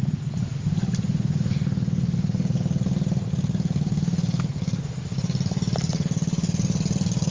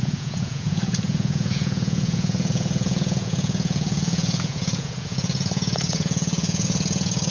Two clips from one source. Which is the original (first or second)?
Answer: first